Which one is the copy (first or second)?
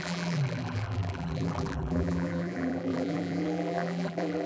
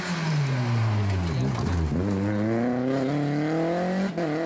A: first